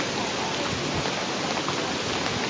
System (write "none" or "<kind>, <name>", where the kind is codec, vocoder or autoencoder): none